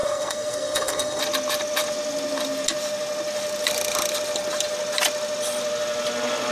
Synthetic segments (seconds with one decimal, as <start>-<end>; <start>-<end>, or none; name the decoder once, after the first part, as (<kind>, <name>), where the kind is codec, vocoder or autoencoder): 0.0-1.2 (codec, SNAC)

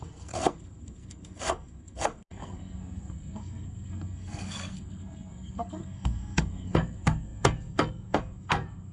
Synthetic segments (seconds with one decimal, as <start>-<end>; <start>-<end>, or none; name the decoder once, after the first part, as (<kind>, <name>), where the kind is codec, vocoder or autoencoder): 0.0-8.9 (codec, SNAC)